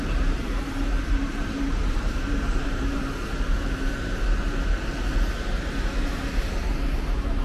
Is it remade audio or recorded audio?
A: remade